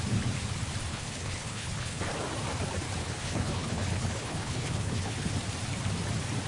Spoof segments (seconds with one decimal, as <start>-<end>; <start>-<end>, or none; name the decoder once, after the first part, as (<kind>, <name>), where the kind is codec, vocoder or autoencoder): 0.9-2.0 (codec, HILCodec); 3.0-5.3